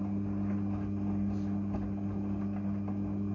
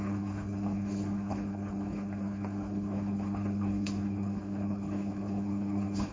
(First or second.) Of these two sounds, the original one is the first